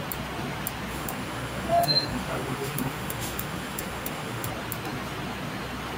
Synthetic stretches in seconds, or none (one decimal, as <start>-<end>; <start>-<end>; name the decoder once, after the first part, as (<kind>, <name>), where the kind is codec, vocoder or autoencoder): 0.9-4.5 (autoencoder, DAC-VAE)